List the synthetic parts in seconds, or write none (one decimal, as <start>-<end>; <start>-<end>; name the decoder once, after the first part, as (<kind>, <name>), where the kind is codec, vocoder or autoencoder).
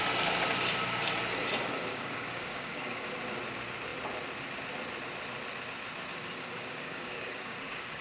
1.9-3.1 (codec, DAC); 6.1-8.0